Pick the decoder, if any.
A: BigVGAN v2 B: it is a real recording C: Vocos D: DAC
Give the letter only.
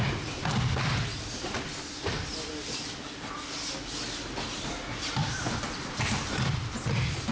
B